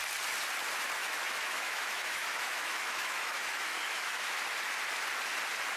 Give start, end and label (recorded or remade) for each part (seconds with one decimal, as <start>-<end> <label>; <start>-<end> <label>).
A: 0.0-1.0 recorded; 1.0-4.4 remade; 4.4-5.8 recorded

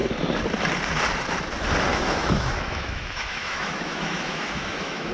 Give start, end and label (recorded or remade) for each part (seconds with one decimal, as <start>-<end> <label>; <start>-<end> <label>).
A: 0.0-1.9 recorded; 1.9-5.1 remade

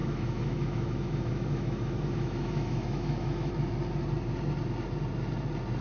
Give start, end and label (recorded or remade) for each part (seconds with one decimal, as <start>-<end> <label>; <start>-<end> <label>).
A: 0.0-3.5 remade; 3.5-5.8 recorded

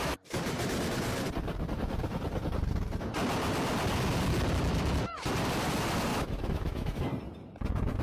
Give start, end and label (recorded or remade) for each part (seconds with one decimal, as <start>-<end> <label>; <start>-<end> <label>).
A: 0.0-6.1 recorded; 6.1-7.0 remade; 7.0-8.0 recorded